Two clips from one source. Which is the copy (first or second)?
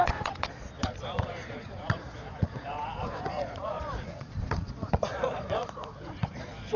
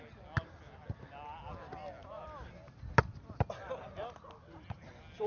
first